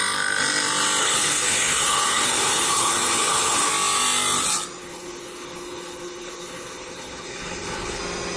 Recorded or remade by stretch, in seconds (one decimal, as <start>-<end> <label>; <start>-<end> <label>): 0.0-1.0 recorded; 1.0-3.7 remade; 3.7-4.8 recorded; 4.8-8.0 remade; 8.0-8.4 recorded